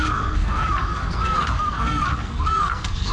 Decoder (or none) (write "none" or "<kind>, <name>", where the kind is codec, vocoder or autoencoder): codec, SNAC